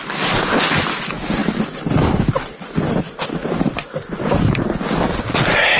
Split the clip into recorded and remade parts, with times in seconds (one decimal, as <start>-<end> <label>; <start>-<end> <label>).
0.0-5.8 recorded